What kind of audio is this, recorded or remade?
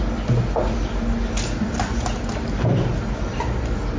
recorded